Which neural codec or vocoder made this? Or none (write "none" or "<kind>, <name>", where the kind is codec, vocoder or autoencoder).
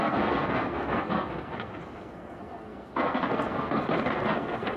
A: codec, SNAC